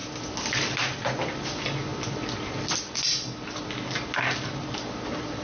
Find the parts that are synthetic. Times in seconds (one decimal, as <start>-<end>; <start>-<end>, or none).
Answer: none

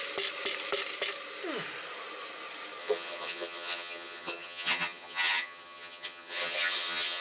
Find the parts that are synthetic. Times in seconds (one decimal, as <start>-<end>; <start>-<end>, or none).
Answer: 2.8-7.2

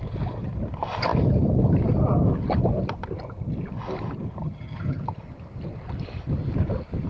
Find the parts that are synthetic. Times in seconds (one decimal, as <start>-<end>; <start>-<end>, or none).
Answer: 4.4-5.0

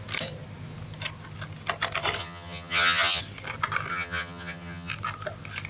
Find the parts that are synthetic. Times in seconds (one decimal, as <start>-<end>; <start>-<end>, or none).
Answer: 2.2-3.2; 3.9-4.9

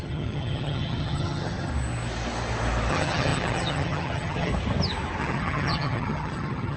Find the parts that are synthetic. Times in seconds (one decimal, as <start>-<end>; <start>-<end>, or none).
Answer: 0.0-1.7; 2.9-4.5; 5.2-6.8

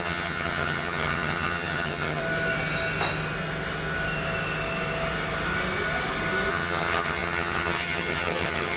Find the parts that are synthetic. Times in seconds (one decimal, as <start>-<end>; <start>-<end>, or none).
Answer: 0.0-2.2; 6.5-8.8